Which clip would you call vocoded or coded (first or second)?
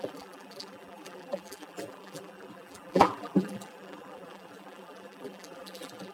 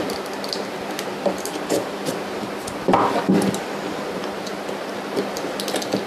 first